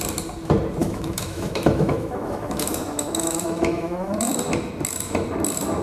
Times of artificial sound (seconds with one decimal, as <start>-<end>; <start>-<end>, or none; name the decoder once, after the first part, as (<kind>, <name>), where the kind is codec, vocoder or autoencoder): 0.8-4.3 (autoencoder, DAC-VAE)